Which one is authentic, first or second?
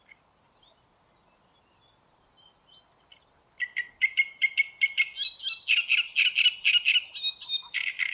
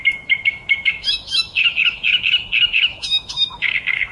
first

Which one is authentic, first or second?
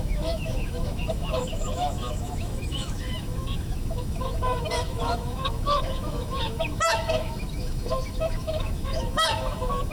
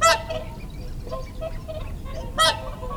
second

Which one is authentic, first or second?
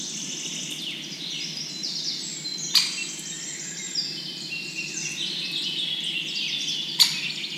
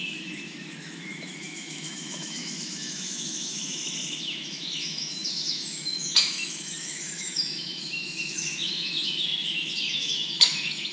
first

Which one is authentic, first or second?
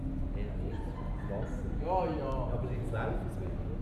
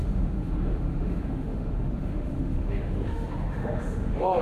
first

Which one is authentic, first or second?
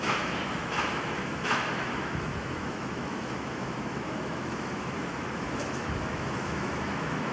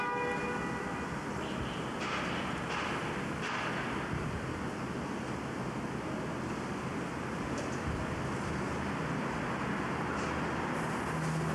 second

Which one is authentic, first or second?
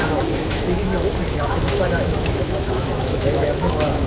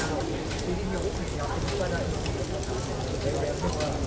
second